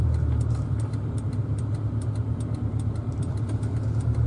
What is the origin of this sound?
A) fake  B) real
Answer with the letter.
A